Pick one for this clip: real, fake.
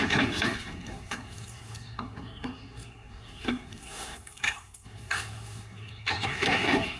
fake